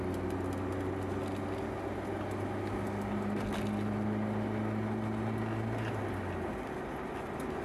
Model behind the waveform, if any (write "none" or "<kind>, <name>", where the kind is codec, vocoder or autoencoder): none